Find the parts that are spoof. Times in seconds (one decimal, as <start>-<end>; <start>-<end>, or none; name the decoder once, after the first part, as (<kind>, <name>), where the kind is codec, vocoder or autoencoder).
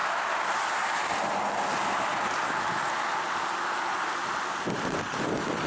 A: none